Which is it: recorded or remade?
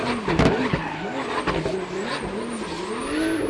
recorded